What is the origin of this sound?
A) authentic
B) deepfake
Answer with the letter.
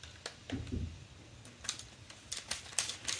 A